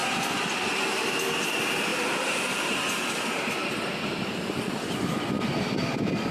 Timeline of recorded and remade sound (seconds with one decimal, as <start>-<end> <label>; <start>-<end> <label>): 0.0-0.6 remade; 0.6-1.9 recorded; 1.9-2.4 remade; 2.4-6.3 recorded